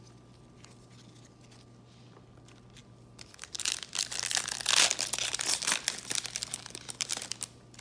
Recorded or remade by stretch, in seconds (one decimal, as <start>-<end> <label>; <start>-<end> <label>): 0.0-7.8 recorded